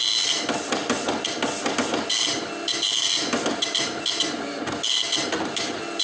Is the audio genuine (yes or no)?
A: yes